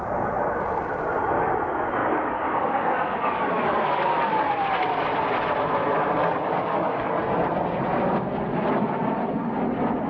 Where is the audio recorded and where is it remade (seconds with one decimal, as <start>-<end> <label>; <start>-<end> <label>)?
0.0-2.0 recorded; 2.0-4.5 remade; 4.5-6.2 recorded; 6.2-7.2 remade; 7.2-10.1 recorded